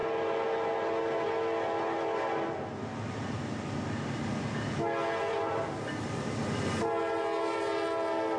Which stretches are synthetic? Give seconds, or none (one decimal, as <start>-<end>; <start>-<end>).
none